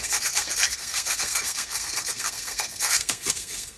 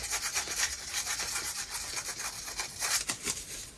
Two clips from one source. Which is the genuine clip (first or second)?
second